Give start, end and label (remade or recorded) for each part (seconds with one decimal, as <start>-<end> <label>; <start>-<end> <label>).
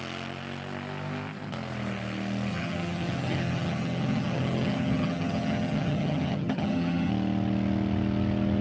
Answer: 0.0-2.5 recorded; 2.5-7.1 remade; 7.1-8.6 recorded